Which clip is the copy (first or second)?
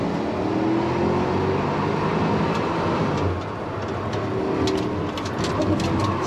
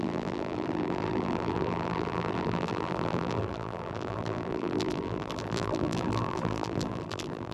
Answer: second